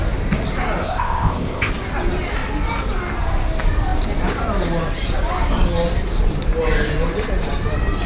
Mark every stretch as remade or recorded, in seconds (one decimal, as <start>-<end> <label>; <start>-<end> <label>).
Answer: 0.0-0.8 recorded; 0.8-1.7 remade; 1.7-8.1 recorded